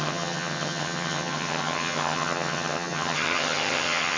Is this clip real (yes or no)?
no